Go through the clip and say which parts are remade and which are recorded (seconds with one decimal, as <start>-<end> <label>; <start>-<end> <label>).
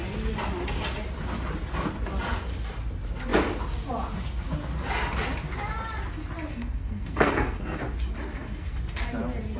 0.0-6.5 recorded; 6.5-7.8 remade; 7.8-8.3 recorded; 8.3-8.8 remade; 8.8-9.6 recorded